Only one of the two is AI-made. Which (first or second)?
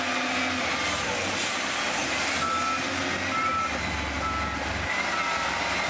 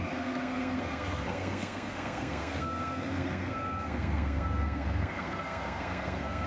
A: second